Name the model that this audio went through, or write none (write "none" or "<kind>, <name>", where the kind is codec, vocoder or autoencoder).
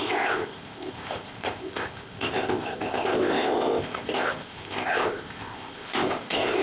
codec, ZipCodec